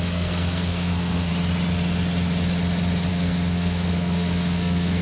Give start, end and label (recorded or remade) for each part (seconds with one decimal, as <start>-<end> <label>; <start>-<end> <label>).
0.0-1.3 remade; 1.3-3.1 recorded; 3.1-5.0 remade